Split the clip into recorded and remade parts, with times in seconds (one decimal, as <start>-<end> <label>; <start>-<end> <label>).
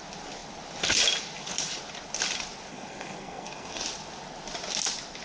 0.0-2.7 recorded; 2.7-3.8 remade; 3.8-5.2 recorded